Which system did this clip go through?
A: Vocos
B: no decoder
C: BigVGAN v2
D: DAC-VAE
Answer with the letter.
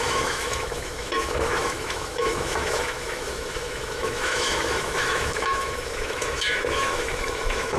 D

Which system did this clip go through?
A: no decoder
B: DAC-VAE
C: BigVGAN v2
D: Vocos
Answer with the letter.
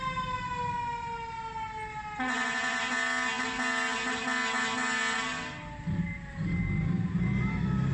A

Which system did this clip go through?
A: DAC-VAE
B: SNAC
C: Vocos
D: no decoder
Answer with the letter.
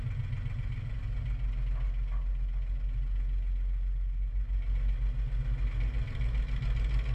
D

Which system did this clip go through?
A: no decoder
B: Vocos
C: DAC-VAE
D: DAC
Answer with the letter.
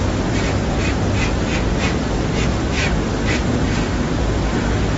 A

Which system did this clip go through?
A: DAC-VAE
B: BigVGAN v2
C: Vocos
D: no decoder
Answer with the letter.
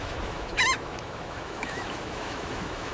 A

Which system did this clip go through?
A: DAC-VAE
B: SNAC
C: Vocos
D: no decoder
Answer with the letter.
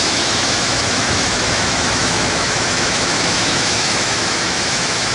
A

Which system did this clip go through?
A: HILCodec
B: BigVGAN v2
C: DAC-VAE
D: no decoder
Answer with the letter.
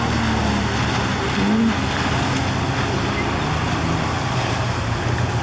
D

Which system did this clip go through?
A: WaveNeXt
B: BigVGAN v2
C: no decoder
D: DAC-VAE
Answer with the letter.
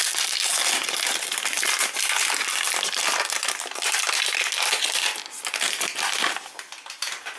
C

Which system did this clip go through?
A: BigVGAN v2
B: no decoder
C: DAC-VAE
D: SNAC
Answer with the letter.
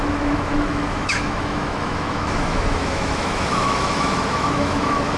C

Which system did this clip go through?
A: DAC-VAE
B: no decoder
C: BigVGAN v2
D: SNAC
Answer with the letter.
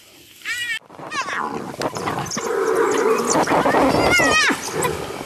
B